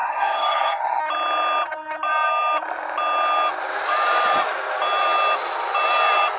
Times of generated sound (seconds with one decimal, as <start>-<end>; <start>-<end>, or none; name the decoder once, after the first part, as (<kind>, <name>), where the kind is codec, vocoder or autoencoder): 0.0-1.0 (codec, SNAC)